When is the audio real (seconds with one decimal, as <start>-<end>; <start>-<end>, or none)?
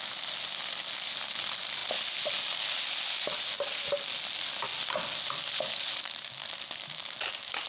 0.0-7.7